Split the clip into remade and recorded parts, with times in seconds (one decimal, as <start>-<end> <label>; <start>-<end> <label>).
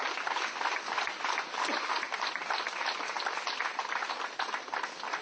0.0-5.2 recorded